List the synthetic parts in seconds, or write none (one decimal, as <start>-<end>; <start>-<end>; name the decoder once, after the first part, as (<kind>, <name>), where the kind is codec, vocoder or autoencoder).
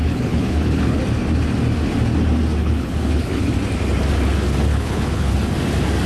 0.0-1.0 (codec, HILCodec); 2.6-3.5; 4.7-5.3